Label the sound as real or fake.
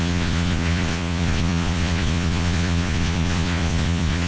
fake